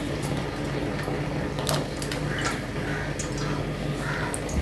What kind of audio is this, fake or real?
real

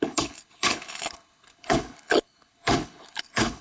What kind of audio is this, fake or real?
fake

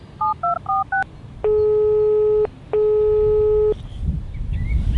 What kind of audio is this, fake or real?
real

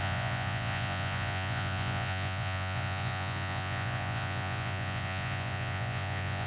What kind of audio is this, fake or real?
fake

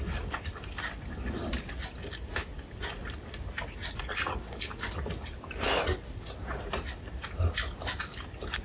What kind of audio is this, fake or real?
real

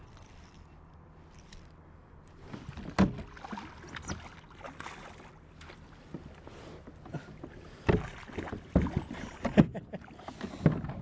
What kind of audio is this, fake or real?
real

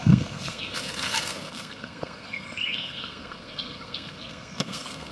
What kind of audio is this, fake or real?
fake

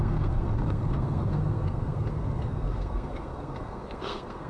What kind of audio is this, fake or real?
fake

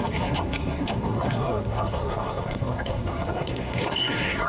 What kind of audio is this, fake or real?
fake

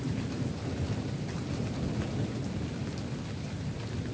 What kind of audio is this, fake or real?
real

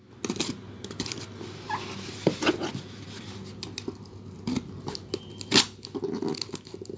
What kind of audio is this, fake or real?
real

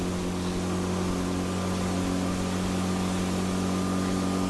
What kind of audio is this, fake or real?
real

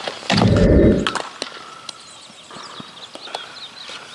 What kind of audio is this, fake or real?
real